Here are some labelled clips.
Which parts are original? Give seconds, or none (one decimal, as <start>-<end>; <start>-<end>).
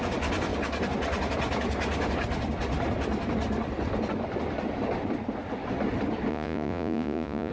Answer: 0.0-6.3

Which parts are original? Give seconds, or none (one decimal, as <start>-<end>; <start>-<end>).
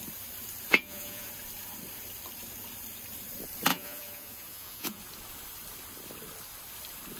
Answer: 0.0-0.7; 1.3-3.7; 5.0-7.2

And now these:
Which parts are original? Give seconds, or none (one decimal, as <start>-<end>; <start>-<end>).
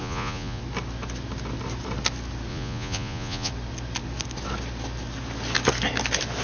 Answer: 0.6-2.5; 3.5-6.4